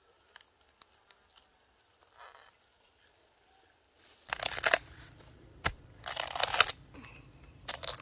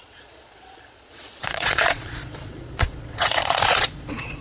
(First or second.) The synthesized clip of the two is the second